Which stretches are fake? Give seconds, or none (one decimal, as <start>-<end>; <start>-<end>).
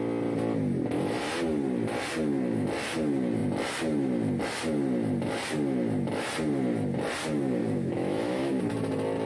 7.6-8.6